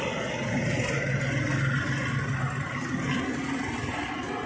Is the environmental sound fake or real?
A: real